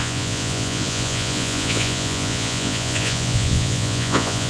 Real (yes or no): no